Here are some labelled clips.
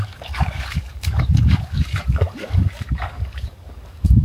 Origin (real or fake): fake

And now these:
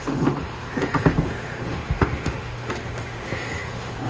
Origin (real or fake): fake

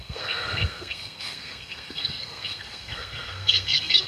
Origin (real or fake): fake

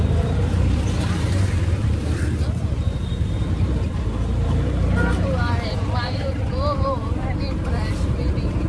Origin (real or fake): fake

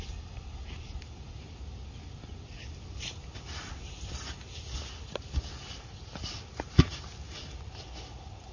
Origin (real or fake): real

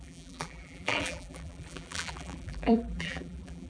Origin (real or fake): fake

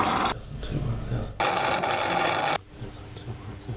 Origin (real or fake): real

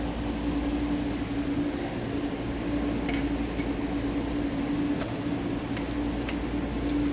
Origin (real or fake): real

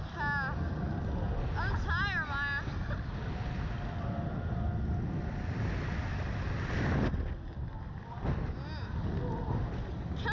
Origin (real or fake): real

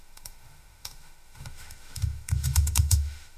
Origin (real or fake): fake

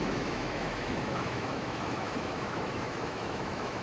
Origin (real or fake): fake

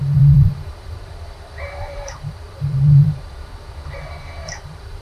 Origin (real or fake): fake